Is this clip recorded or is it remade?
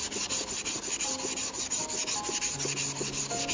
recorded